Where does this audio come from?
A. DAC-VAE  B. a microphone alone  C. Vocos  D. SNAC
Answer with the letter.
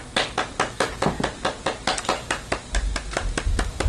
B